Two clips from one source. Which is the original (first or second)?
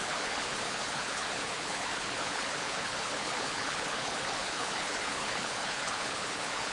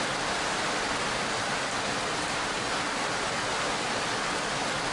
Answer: second